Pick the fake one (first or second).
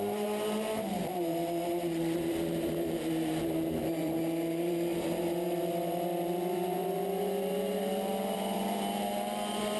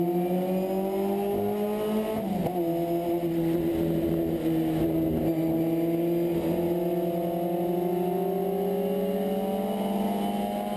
first